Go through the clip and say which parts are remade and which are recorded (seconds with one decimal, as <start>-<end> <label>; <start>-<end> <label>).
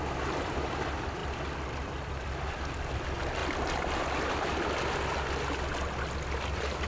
0.0-6.9 recorded